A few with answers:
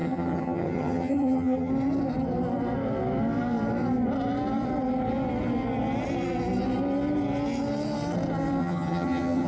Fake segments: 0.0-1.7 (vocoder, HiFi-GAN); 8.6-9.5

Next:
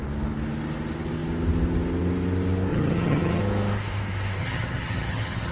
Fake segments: 2.7-3.4 (vocoder, HiFi-GAN); 4.4-5.5

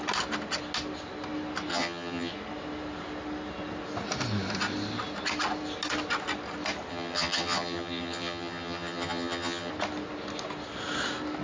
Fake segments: 1.7-2.3 (vocoder, HiFi-GAN); 6.9-9.7